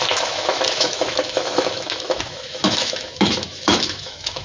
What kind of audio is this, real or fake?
fake